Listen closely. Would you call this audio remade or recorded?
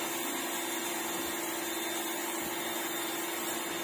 recorded